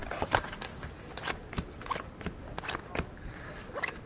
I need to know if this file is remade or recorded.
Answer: recorded